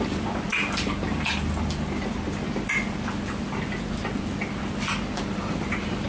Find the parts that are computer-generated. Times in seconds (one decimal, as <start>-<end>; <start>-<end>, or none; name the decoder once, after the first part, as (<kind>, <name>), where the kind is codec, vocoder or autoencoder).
none